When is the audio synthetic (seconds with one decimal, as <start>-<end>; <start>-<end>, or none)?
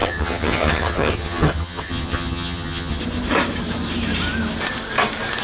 0.0-3.0